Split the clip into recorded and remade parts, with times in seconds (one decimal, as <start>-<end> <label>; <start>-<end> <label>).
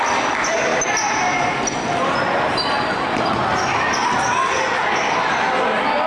0.0-6.1 recorded